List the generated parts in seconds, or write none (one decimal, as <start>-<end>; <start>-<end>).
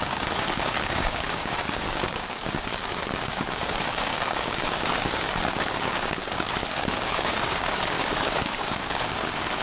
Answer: 0.0-6.2; 6.7-9.6